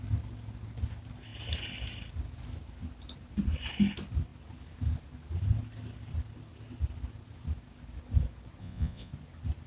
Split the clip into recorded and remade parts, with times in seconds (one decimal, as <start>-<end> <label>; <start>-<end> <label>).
0.0-8.6 recorded; 8.6-9.1 remade; 9.1-9.7 recorded